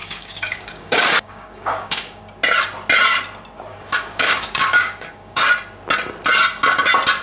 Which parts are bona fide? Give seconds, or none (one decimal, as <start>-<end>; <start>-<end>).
2.2-3.7; 5.4-7.2